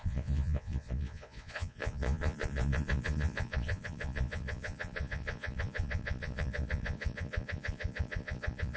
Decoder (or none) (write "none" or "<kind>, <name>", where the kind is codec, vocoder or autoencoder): vocoder, Vocos